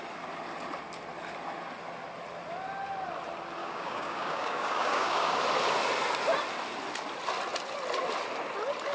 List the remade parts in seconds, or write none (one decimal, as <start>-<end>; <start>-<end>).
3.6-5.4